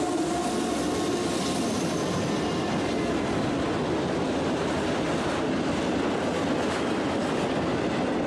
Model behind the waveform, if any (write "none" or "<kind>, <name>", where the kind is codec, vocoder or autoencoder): none